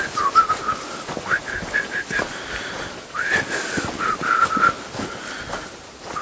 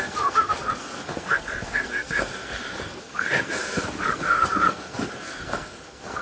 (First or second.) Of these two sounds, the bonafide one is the first